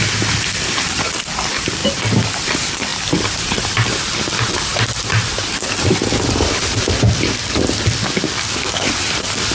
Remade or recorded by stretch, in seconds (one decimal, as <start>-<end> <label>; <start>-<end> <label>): 0.0-8.0 recorded; 8.0-8.9 remade; 8.9-9.5 recorded